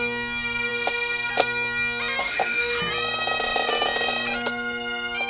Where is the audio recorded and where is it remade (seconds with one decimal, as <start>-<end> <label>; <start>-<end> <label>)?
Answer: 0.0-2.2 recorded; 2.2-2.8 remade; 2.8-5.3 recorded